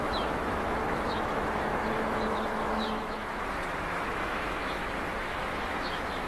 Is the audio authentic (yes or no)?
no